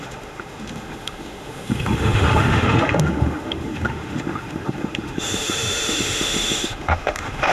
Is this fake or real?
fake